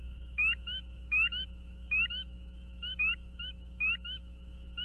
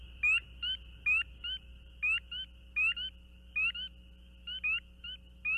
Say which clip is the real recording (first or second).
second